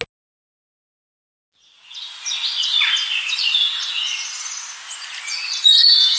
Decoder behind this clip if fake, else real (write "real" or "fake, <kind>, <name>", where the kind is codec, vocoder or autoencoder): real